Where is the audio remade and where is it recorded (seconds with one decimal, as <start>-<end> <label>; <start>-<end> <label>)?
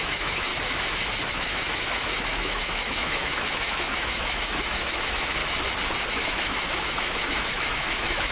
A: 0.0-0.5 remade; 0.5-1.3 recorded; 1.3-5.4 remade; 5.4-6.1 recorded; 6.1-8.3 remade